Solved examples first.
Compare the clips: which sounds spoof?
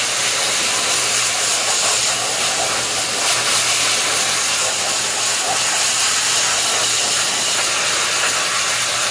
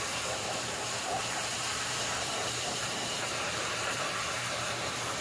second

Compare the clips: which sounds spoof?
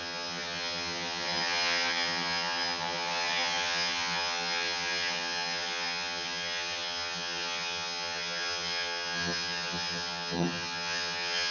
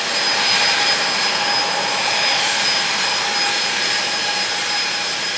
first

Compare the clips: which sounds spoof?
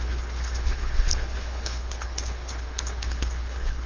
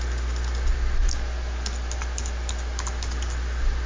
first